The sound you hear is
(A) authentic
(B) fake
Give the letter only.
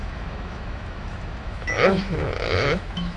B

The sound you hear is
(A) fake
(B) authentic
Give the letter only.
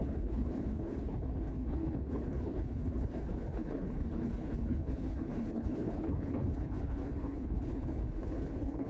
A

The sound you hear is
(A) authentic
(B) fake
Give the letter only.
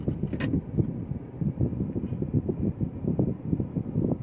A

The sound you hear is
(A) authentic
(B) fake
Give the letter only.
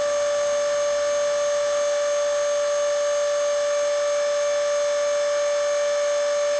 A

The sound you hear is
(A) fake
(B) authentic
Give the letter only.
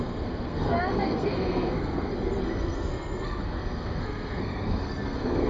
A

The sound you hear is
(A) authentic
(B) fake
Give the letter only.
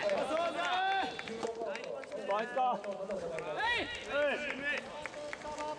A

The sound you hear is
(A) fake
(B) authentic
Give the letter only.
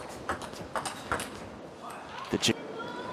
B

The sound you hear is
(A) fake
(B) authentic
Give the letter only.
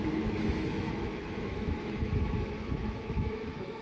A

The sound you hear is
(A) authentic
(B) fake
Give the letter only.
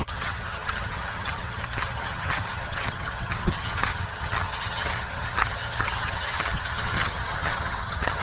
B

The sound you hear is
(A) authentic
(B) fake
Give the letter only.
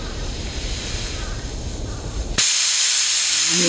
A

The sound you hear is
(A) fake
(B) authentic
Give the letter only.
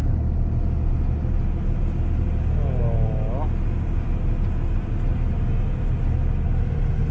B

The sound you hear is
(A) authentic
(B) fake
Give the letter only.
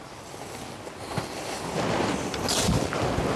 A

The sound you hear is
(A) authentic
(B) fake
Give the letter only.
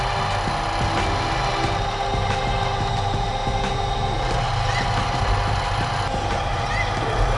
A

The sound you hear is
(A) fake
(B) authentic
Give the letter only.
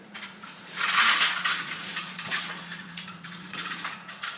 A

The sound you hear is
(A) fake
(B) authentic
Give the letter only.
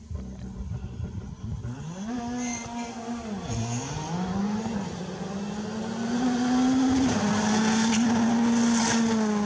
B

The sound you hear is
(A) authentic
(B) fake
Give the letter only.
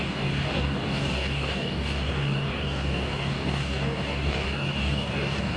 B